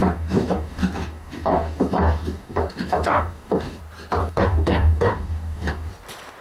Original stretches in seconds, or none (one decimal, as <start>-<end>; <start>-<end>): 3.8-4.2; 5.9-6.4